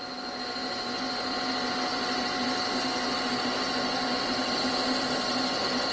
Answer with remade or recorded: recorded